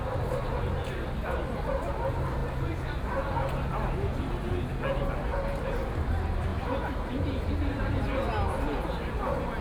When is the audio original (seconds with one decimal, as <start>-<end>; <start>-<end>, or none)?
0.0-6.5; 7.5-9.6